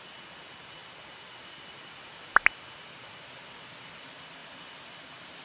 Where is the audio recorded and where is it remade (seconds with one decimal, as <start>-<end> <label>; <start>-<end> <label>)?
0.0-5.4 recorded